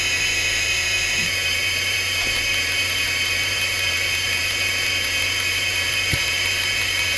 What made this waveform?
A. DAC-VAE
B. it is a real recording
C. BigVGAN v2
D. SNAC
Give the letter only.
C